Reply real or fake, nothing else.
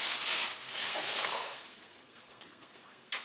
fake